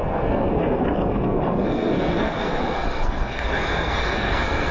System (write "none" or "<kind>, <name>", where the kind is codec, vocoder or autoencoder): codec, SNAC